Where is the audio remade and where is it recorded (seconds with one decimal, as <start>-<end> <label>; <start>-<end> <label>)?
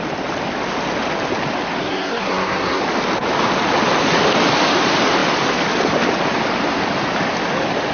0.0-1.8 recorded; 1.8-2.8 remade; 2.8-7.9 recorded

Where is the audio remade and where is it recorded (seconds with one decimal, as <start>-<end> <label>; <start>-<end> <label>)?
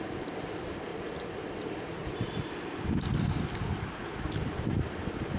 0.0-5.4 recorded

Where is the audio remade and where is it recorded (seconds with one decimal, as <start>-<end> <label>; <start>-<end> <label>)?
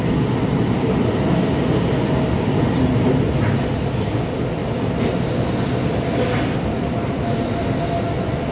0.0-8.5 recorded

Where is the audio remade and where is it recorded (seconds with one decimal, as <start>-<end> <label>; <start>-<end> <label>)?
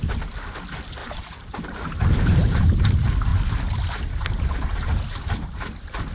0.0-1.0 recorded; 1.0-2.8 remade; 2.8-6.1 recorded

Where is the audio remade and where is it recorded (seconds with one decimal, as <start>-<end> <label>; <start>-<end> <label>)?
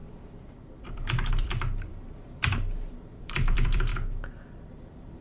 0.0-3.9 remade; 3.9-4.7 recorded; 4.7-5.2 remade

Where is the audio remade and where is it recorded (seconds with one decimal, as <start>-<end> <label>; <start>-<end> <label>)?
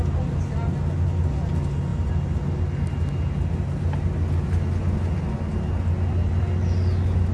0.0-7.3 recorded